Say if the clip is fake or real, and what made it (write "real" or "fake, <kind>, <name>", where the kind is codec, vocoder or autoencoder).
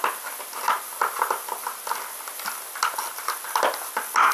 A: real